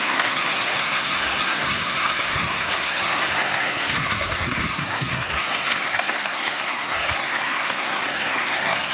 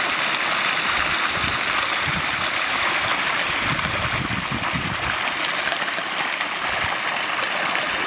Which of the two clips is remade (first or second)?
first